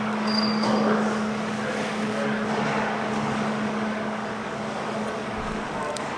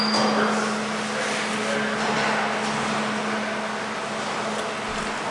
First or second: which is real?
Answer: second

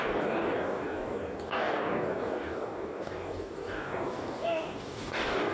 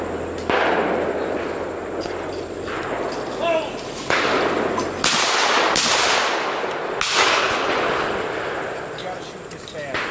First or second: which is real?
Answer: second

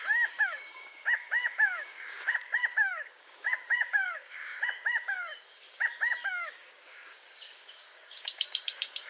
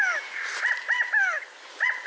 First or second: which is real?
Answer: second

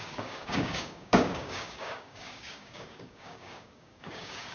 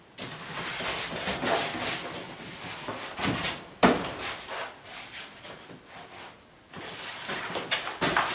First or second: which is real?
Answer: second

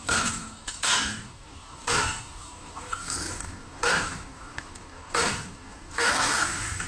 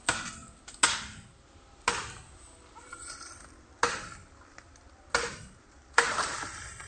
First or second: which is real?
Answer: second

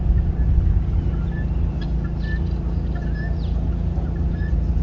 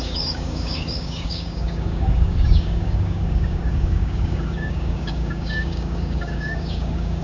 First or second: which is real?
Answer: first